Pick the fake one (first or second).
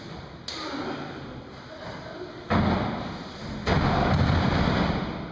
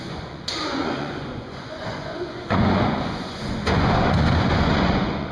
second